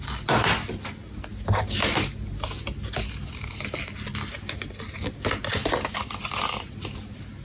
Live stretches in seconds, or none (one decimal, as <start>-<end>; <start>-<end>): 0.0-5.6; 6.2-7.4